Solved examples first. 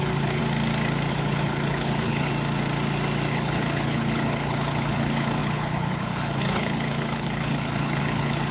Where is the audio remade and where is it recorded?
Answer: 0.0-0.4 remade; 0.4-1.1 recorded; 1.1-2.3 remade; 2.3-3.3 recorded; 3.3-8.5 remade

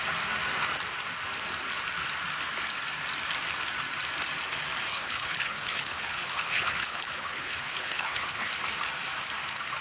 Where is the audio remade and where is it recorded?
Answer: 0.0-4.9 recorded; 4.9-8.5 remade; 8.5-9.8 recorded

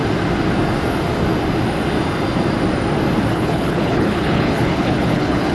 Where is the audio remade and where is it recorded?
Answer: 0.0-3.3 recorded; 3.3-5.5 remade